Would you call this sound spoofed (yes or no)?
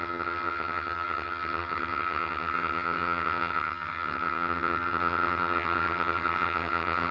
yes